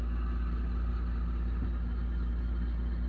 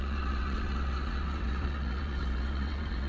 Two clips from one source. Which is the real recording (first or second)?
first